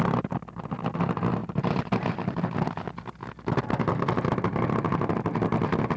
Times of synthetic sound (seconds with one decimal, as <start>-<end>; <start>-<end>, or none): 1.4-2.4